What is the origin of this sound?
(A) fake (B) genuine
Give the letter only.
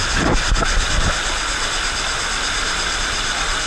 B